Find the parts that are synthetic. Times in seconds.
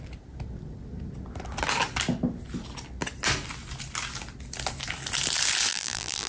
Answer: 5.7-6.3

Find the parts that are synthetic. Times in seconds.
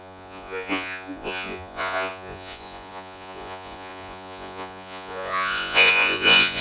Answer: 0.0-6.6